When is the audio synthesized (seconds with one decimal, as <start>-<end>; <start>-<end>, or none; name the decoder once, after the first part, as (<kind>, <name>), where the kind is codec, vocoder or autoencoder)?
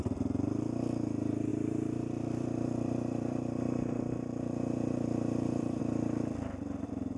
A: 1.5-5.8 (vocoder, BigVGAN v2)